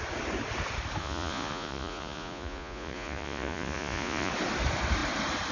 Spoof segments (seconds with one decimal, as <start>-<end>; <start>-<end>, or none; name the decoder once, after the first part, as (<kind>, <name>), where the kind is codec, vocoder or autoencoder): 1.0-4.3 (vocoder, Vocos)